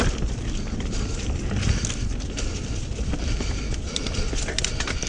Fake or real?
real